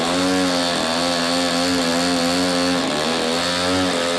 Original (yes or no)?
yes